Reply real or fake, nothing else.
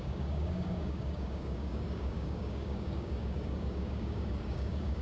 fake